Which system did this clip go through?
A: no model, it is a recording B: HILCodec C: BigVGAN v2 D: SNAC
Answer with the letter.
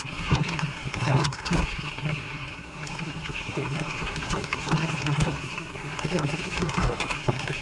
D